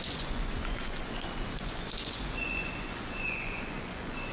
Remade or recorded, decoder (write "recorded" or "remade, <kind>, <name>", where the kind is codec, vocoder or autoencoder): remade, vocoder, Vocos